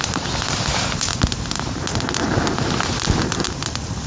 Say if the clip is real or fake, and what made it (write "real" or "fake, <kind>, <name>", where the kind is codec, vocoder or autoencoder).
real